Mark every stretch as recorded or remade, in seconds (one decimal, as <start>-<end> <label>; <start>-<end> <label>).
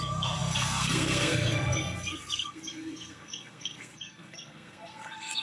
0.0-5.4 remade